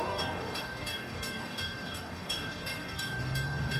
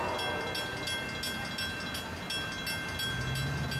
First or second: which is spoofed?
first